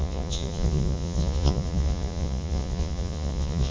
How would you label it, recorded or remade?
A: remade